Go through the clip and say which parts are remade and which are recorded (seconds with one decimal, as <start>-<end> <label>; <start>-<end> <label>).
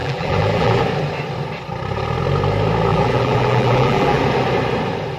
0.0-0.8 remade; 0.8-2.9 recorded; 2.9-4.2 remade; 4.2-5.2 recorded